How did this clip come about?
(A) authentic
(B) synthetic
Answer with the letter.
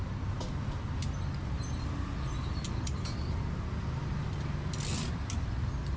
A